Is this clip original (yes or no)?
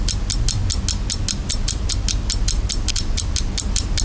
yes